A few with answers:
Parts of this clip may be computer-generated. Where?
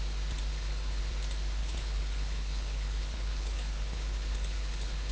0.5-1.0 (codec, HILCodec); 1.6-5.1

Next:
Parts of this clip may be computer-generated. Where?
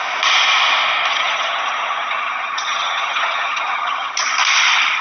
1.1-4.1 (vocoder, HiFi-GAN)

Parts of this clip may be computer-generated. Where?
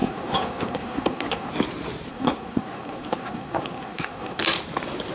0.0-1.5 (codec, SNAC); 2.1-4.4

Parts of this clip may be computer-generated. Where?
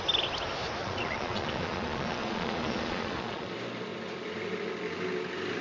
0.8-3.5 (vocoder, Vocos)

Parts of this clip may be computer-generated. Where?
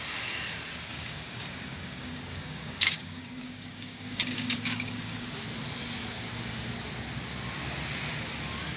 0.9-5.4 (codec, DAC)